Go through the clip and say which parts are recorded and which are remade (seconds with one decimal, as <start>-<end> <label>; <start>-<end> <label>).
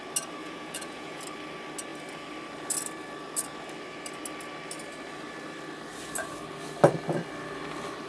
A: 0.0-0.4 recorded; 0.4-1.2 remade; 1.2-8.1 recorded